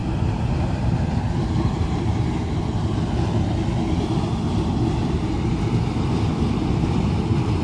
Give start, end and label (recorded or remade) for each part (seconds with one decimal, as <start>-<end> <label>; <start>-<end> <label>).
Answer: 0.0-2.6 remade; 2.6-7.6 recorded